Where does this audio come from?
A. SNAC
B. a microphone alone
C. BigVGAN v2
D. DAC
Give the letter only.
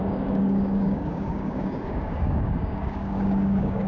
D